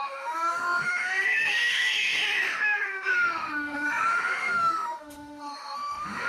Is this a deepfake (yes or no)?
yes